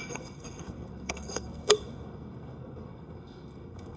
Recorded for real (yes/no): no